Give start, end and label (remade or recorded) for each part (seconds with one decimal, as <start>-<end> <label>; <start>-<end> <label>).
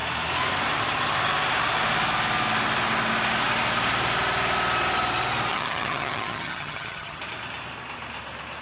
0.0-5.5 recorded; 5.5-7.2 remade; 7.2-8.6 recorded